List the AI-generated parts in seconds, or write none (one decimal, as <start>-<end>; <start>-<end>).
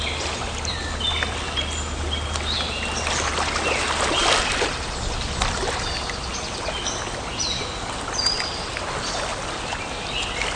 none